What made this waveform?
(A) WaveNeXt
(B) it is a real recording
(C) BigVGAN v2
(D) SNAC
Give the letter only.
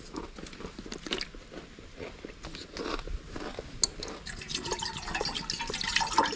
B